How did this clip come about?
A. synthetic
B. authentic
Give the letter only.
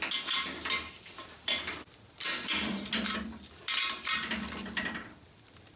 B